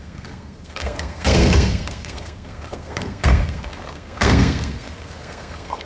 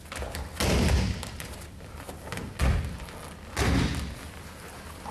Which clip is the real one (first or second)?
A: second